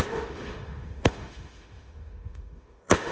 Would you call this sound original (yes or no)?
no